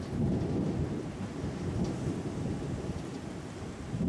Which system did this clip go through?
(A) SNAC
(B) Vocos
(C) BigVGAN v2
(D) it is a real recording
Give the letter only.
D